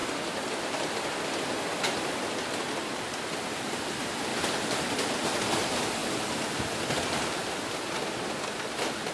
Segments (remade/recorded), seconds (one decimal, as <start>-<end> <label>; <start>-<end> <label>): 0.0-0.6 recorded; 0.6-4.3 remade; 4.3-5.6 recorded; 5.6-6.0 remade; 6.0-6.9 recorded; 6.9-9.1 remade